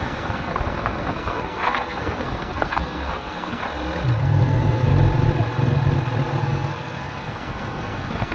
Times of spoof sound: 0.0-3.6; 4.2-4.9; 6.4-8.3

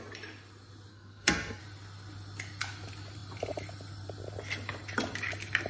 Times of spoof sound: 0.9-1.6

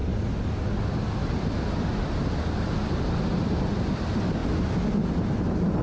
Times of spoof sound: none

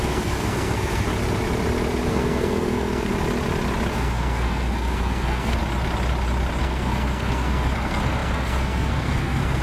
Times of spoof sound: 0.0-1.1; 2.1-3.1; 3.9-5.6; 6.6-9.6

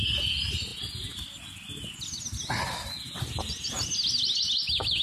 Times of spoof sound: none

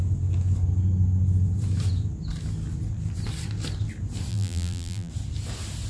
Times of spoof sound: 4.3-5.1

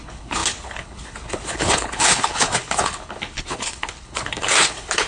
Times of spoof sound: 0.0-5.1